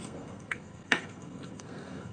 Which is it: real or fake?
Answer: fake